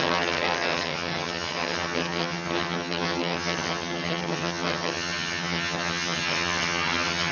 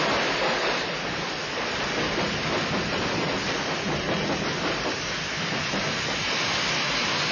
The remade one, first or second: first